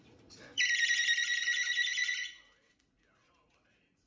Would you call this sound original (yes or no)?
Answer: no